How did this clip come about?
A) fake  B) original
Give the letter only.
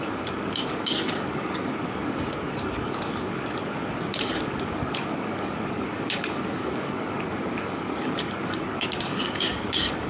A